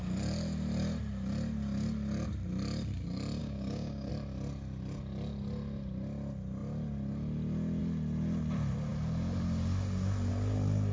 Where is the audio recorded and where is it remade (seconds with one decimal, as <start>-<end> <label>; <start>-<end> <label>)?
0.0-3.4 recorded; 3.4-4.1 remade; 4.1-10.9 recorded